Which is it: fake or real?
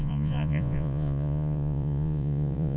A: fake